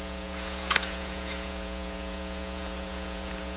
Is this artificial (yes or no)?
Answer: yes